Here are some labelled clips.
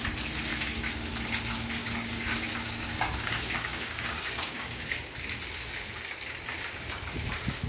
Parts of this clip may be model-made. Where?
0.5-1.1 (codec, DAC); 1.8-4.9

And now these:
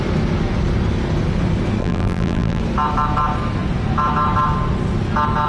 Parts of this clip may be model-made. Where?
1.8-2.6 (vocoder, BigVGAN v2)

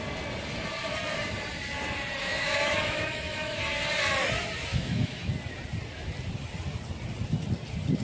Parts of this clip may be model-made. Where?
2.2-3.6 (autoencoder, DAC-VAE); 4.7-5.3

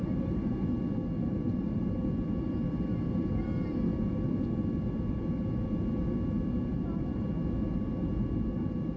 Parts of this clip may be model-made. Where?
0.0-0.5 (vocoder, BigVGAN v2); 1.2-1.8; 6.7-7.3

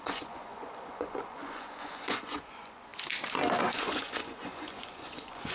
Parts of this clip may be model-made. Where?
0.0-2.9 (vocoder, Vocos); 3.6-5.5

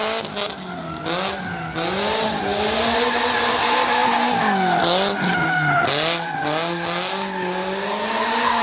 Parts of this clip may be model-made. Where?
none